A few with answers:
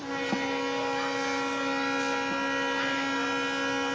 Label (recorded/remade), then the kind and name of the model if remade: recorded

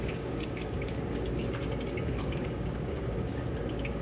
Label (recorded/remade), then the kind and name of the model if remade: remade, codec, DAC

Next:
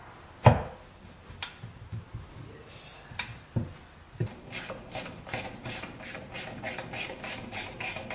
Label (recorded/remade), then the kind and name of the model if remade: recorded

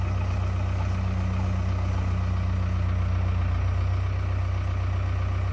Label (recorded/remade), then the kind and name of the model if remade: recorded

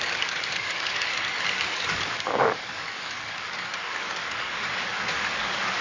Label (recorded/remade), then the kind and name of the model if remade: remade, codec, DAC